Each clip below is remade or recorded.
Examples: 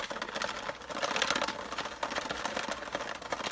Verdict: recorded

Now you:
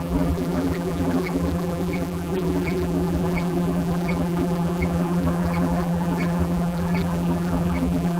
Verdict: remade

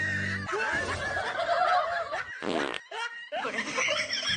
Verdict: recorded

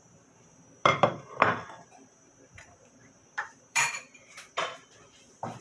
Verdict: remade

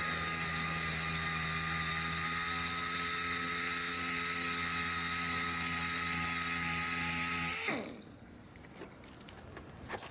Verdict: recorded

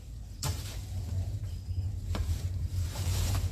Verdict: remade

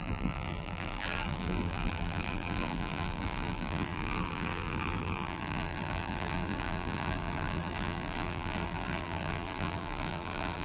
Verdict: remade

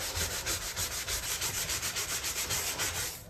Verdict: remade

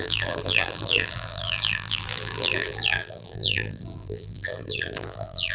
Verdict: remade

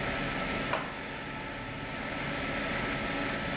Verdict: recorded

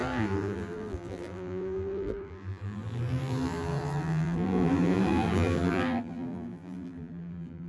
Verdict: remade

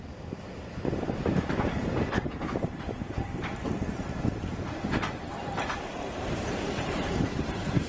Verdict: remade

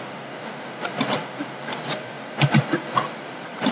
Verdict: remade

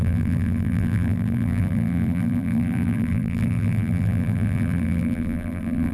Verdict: remade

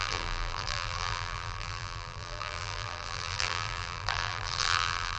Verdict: remade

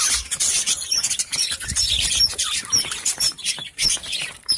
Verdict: remade